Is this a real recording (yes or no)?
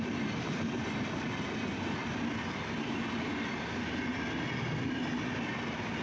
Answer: yes